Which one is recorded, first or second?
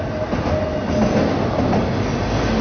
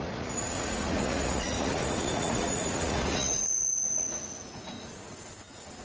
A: first